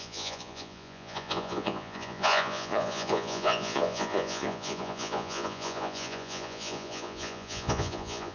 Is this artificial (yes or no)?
yes